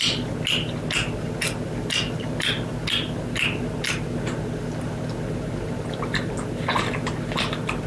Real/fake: real